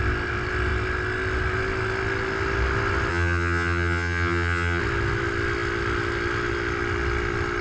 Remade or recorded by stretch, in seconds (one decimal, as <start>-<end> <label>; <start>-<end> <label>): 0.0-3.1 recorded; 3.1-4.8 remade; 4.8-7.6 recorded